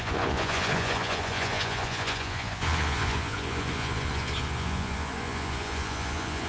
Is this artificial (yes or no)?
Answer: yes